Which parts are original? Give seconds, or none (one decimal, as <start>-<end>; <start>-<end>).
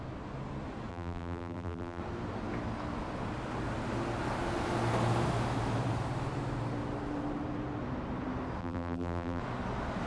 0.0-0.9; 2.0-8.6; 9.4-10.1